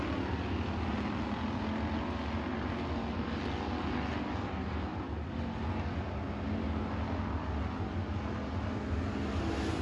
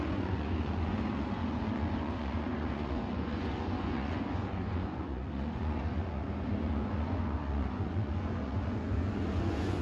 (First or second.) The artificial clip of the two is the second